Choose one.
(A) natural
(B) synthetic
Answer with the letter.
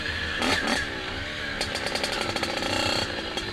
B